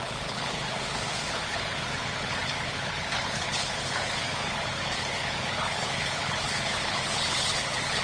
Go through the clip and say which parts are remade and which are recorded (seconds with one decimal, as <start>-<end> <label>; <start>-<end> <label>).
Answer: 0.0-8.0 remade